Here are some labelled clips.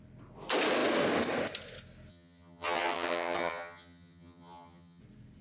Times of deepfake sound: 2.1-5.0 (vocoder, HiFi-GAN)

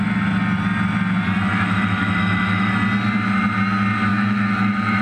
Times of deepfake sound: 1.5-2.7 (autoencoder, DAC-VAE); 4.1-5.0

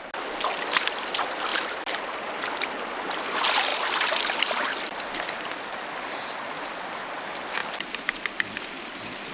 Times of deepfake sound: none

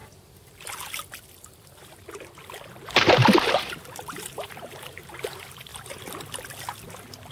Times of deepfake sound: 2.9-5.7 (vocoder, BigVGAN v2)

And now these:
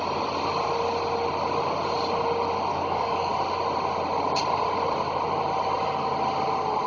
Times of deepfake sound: 2.7-3.3 (codec, DAC)